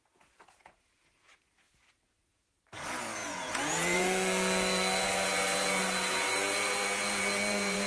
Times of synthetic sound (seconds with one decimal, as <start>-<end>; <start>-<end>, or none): 0.0-7.9